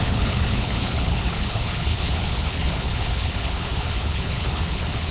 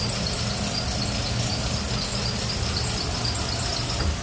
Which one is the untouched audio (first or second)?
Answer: second